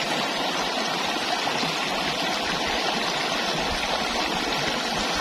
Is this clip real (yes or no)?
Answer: yes